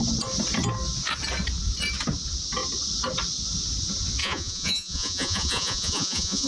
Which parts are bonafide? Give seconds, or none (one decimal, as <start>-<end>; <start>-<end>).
0.0-4.2